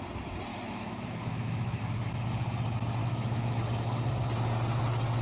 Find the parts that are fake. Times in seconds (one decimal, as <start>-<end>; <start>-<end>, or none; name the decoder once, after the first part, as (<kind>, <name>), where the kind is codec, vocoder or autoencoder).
0.5-1.8 (autoencoder, DAC-VAE); 3.0-3.5